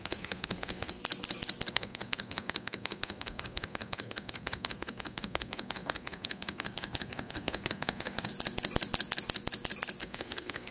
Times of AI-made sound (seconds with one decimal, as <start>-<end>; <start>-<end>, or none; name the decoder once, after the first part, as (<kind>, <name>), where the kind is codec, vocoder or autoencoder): 0.0-1.0 (codec, SNAC); 1.7-8.3; 10.0-10.7